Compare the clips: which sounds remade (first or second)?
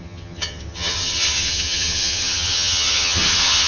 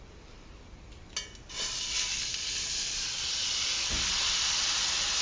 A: first